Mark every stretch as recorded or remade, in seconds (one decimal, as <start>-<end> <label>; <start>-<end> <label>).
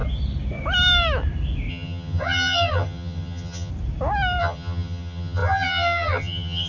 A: 0.0-1.7 recorded; 1.7-3.7 remade; 3.7-4.4 recorded; 4.4-6.7 remade